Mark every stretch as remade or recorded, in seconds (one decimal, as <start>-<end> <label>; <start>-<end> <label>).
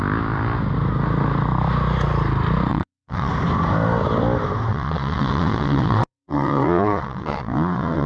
0.0-2.7 recorded; 2.7-3.3 remade; 3.3-4.7 recorded; 4.7-8.1 remade